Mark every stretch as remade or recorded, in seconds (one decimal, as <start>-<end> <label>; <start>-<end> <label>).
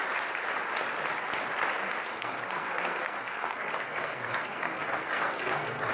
0.0-2.1 recorded; 2.1-5.9 remade